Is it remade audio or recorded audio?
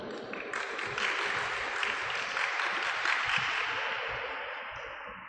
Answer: recorded